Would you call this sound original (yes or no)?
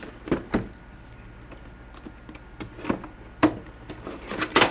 yes